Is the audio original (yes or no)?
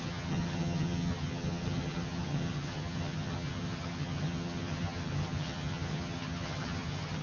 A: no